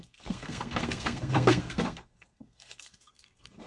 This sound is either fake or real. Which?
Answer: fake